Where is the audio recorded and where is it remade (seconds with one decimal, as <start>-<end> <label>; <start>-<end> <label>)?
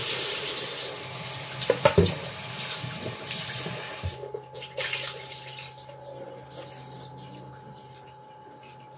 0.0-0.7 remade; 0.7-9.0 recorded